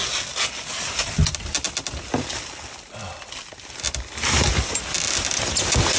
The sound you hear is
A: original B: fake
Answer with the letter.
A